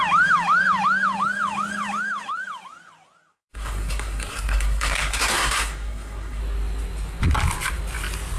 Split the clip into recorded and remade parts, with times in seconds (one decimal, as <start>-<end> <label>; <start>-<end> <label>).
0.0-3.3 recorded; 3.3-6.4 remade; 6.4-8.4 recorded

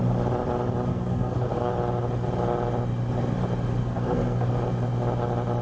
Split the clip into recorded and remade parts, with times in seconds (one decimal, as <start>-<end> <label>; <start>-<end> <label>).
0.0-0.9 recorded; 0.9-1.7 remade; 1.7-3.8 recorded; 3.8-4.5 remade; 4.5-5.6 recorded

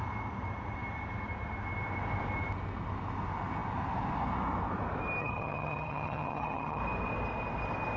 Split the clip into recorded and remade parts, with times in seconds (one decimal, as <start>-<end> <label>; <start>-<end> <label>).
0.0-5.2 recorded; 5.2-6.8 remade; 6.8-8.0 recorded

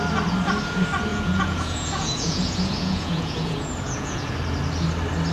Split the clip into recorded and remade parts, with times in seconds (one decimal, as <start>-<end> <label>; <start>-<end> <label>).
0.0-1.1 recorded; 1.1-4.3 remade; 4.3-5.3 recorded

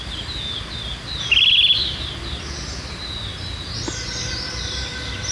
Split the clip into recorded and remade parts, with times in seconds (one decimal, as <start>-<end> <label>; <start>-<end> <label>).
0.0-5.3 recorded